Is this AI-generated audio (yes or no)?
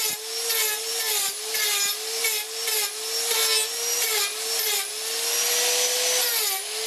no